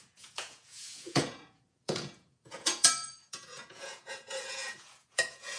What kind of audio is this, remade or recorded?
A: remade